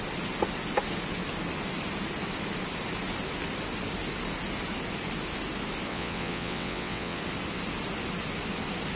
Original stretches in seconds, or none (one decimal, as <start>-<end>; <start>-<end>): 0.0-5.9; 7.2-9.0